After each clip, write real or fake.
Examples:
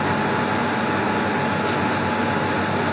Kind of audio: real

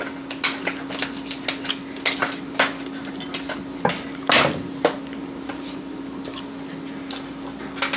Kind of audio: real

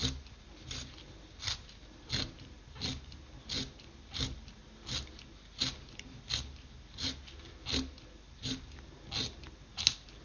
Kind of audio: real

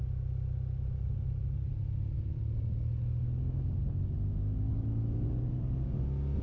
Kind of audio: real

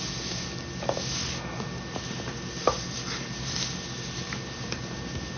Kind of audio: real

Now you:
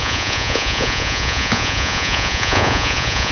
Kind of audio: fake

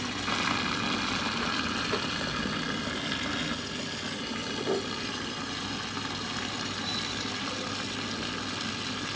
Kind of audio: real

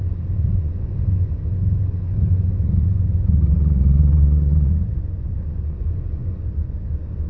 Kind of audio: fake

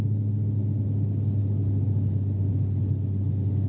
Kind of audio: real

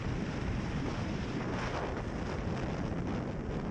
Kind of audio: real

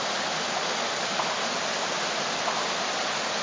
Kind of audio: real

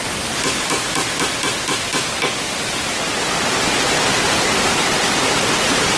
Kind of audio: real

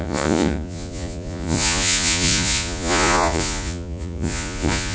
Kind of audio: fake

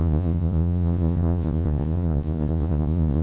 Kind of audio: fake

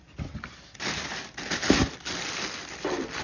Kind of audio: real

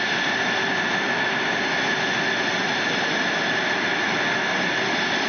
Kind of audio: real